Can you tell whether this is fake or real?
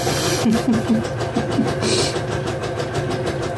real